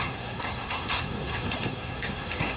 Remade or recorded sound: remade